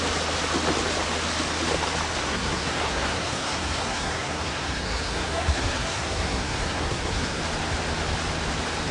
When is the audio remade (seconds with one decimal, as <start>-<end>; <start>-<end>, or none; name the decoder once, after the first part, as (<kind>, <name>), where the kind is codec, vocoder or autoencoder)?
2.2-7.4 (codec, SNAC)